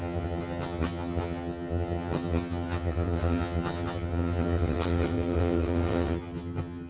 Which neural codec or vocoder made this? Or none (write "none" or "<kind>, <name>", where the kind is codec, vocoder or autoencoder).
vocoder, HiFi-GAN